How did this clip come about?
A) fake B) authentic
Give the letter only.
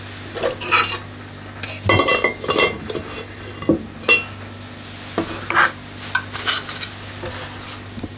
B